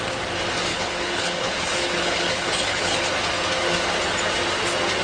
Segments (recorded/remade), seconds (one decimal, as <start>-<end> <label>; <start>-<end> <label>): 0.0-0.7 recorded; 0.7-3.1 remade; 3.1-5.0 recorded